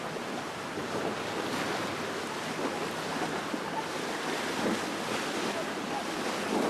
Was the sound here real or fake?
real